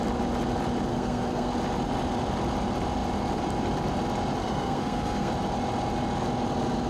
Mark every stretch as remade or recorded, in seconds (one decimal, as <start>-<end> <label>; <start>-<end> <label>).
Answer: 0.0-0.9 recorded; 0.9-1.5 remade; 1.5-4.4 recorded; 4.4-5.3 remade; 5.3-6.9 recorded

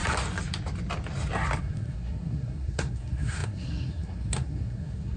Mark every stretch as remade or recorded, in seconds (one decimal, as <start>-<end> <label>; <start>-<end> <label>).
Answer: 0.0-1.6 recorded; 1.6-5.2 remade